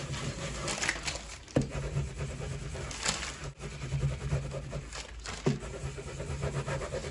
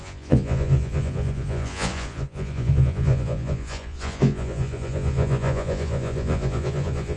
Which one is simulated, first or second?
second